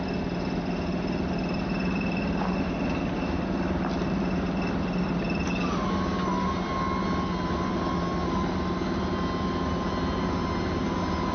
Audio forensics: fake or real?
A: real